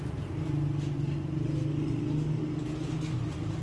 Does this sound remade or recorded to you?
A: recorded